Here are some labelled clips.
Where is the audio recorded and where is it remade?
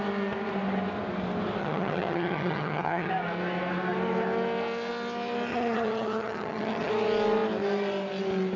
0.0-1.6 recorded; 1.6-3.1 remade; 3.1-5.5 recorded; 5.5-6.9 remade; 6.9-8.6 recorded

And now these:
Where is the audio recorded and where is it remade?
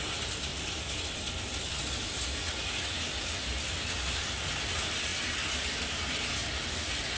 0.0-7.2 recorded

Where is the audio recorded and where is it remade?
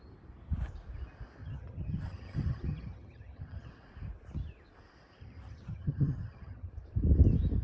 0.0-1.4 recorded; 1.4-3.7 remade; 3.7-5.2 recorded; 5.2-6.7 remade; 6.7-7.6 recorded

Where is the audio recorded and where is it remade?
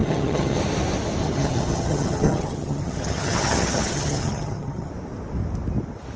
0.0-0.6 remade; 0.6-1.2 recorded; 1.2-4.9 remade; 4.9-6.2 recorded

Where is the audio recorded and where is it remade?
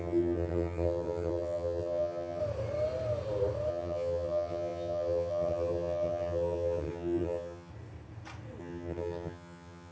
0.0-2.4 remade; 2.4-3.7 recorded; 3.7-7.7 remade; 7.7-8.6 recorded; 8.6-9.9 remade